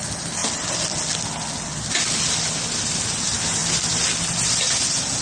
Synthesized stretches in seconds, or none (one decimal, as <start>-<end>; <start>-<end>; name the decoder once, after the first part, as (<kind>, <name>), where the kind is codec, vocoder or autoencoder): none

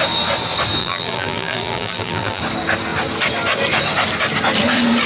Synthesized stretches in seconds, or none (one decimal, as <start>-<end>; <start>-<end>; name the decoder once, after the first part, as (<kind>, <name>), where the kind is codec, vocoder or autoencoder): 0.8-2.4 (vocoder, BigVGAN v2)

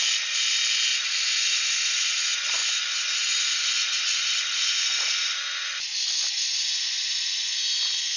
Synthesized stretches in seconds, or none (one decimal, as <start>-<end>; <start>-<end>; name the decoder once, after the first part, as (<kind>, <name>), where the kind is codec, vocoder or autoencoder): 0.9-1.8 (vocoder, Vocos)

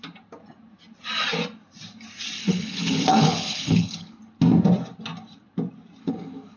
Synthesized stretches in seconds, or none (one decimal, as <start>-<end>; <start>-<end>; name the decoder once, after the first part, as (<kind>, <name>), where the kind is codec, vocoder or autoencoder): 2.4-4.2 (codec, HILCodec); 6.0-6.6